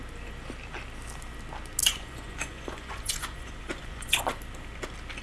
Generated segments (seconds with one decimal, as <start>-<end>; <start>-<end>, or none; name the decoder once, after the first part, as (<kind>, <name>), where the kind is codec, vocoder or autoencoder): 1.8-4.2 (vocoder, Vocos)